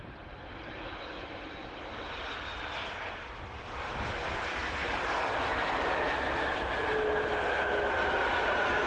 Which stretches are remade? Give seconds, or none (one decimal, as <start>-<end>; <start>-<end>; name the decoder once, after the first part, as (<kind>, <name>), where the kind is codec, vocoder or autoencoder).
none